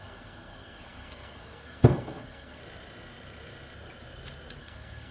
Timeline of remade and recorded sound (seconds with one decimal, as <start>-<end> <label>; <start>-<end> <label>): 0.0-2.6 remade; 2.6-4.6 recorded; 4.6-5.1 remade